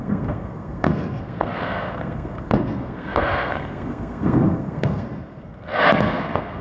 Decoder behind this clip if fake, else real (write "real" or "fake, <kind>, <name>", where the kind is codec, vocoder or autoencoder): fake, codec, SNAC